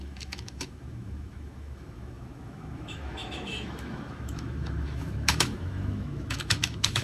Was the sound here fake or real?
fake